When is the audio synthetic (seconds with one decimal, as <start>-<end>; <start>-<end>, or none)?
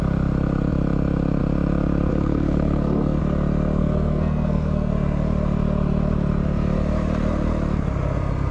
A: 2.1-3.2; 3.8-4.9